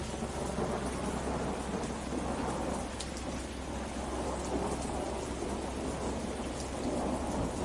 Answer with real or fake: real